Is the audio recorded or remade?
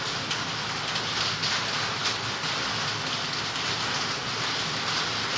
recorded